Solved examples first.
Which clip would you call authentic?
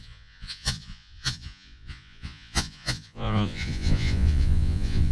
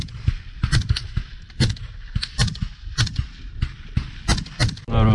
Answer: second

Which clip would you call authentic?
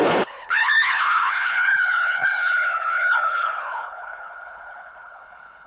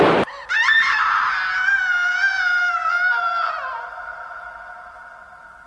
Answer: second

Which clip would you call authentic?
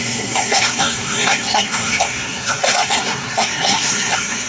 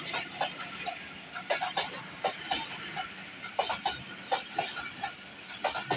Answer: second